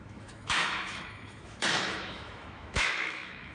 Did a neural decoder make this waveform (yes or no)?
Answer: yes